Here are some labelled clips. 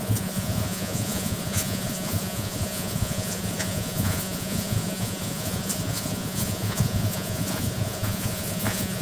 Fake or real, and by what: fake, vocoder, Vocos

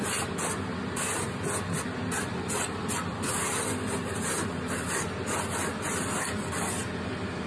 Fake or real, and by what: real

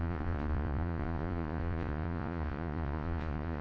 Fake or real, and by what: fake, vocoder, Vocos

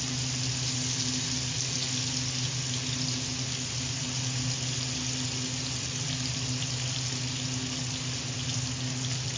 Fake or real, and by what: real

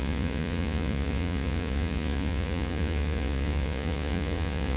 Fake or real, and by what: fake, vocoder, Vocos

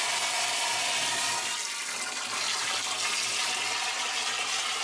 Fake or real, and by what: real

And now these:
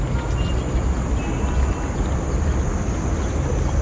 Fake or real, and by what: real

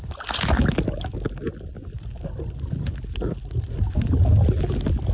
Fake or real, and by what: real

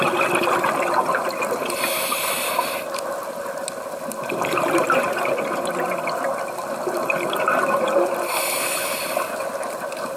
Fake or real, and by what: real